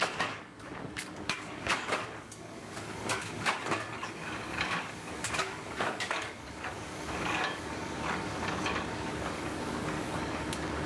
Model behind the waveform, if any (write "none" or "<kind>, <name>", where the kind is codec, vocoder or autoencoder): codec, DAC